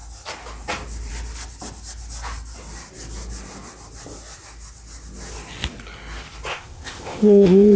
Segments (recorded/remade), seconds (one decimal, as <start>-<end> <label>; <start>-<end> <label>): 0.0-6.5 recorded; 6.5-7.8 remade